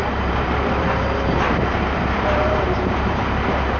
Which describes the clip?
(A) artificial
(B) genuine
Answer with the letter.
A